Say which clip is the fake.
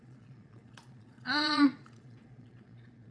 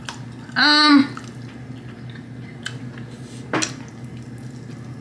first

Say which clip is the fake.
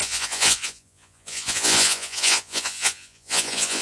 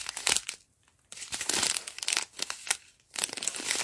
first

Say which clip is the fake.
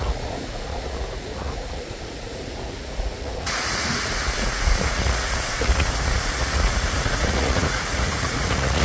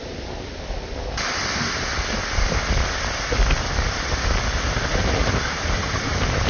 first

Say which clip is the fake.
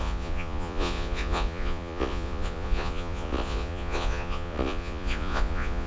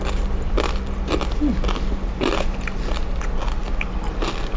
first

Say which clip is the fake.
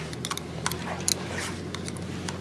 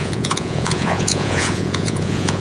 second